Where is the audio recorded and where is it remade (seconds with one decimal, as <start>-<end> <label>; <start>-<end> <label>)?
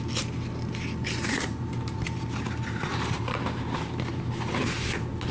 0.0-1.0 recorded; 1.0-4.2 remade; 4.2-5.3 recorded